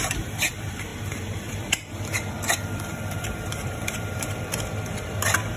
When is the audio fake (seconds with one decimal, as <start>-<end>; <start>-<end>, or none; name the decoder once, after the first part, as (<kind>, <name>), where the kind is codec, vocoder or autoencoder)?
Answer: 0.0-5.6 (vocoder, BigVGAN v2)